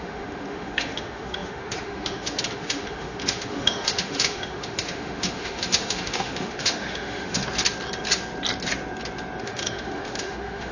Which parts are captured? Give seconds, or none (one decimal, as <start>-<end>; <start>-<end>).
7.4-9.4